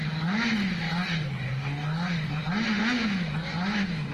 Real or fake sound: real